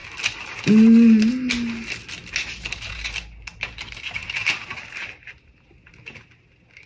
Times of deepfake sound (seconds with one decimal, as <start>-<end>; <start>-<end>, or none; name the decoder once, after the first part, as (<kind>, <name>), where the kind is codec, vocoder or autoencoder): none